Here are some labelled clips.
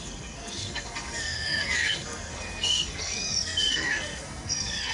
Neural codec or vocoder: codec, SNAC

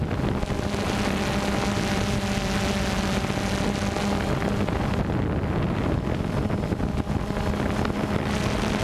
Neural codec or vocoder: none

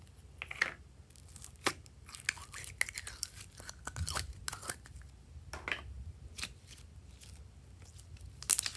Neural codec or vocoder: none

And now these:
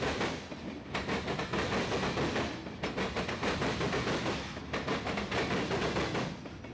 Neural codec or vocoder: none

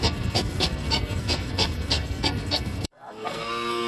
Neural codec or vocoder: codec, SNAC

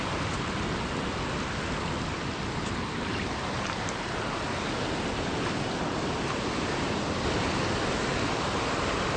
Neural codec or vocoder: none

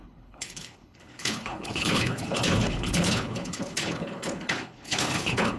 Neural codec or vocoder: codec, HILCodec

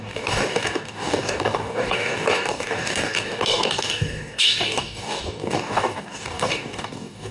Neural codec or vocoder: codec, DAC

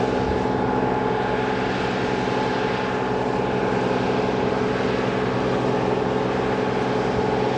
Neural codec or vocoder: none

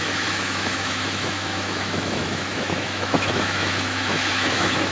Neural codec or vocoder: autoencoder, DAC-VAE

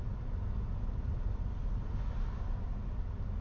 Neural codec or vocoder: none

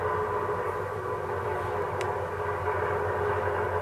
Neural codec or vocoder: none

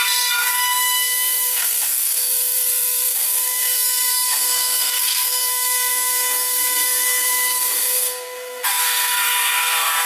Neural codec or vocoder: codec, SNAC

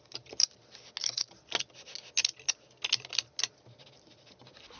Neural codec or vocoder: none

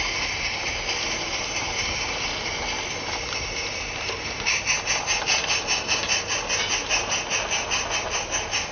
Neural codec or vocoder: none